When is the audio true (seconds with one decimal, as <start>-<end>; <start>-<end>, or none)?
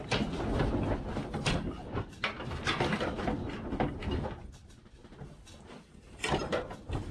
0.0-7.1